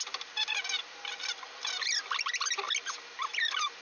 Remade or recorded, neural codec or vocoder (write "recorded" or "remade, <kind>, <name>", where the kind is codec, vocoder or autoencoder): recorded